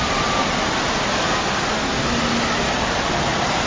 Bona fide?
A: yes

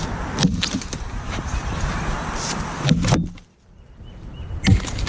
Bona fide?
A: yes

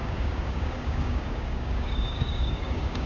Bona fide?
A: no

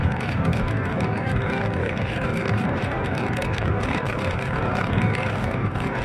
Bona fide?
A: no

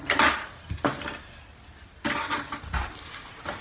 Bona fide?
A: yes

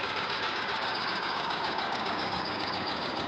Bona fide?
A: no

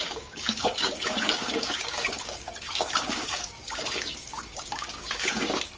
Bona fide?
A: no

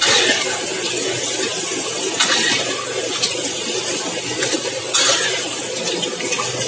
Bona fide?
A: yes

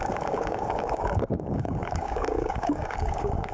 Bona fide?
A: no